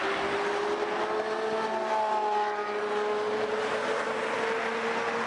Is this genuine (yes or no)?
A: yes